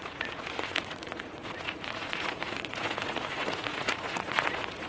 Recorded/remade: remade